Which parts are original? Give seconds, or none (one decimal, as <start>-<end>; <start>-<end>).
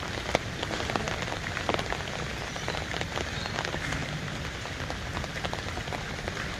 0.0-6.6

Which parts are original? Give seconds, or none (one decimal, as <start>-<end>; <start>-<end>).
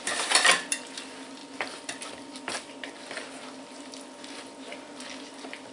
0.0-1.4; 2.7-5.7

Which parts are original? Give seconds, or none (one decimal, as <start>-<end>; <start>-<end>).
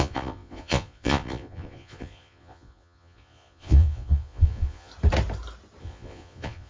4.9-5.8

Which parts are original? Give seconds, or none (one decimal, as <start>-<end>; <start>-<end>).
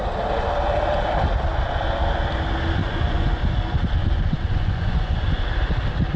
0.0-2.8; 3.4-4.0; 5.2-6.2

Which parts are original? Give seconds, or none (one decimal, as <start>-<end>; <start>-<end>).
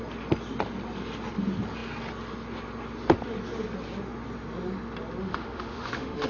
0.0-5.2